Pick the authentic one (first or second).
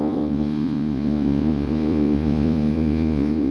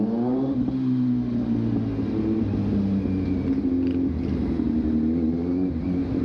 second